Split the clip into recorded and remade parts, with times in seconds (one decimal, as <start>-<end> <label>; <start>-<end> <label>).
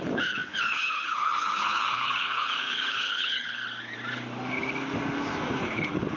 0.0-3.6 remade; 3.6-5.6 recorded; 5.6-6.2 remade